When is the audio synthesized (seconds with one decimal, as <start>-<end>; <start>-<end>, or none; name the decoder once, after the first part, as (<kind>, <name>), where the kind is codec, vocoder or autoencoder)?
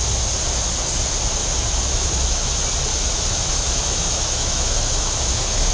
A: 1.4-2.5 (autoencoder, DAC-VAE); 2.9-5.7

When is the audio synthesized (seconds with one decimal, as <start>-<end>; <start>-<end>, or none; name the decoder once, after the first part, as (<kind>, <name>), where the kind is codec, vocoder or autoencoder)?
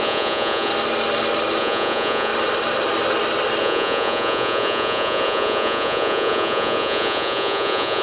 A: 0.0-0.7 (vocoder, Vocos); 1.6-2.3; 3.6-8.0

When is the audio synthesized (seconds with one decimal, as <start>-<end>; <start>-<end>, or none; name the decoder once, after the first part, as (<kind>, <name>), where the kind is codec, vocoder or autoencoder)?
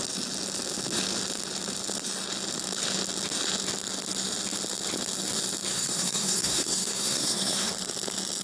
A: 5.7-7.7 (codec, SNAC)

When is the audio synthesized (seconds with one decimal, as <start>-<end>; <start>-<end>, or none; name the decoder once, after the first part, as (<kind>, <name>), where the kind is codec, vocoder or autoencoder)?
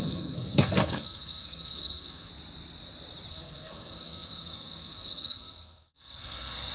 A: 0.0-2.3 (codec, SNAC); 3.3-6.7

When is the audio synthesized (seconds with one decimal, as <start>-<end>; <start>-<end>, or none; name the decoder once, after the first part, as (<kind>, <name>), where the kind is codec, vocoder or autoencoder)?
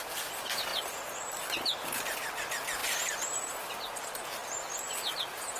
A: none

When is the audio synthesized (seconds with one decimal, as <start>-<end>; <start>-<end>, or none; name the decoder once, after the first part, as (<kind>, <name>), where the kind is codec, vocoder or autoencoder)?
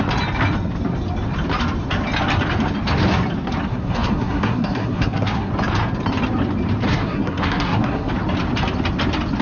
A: 3.7-5.5 (codec, SNAC); 6.9-8.1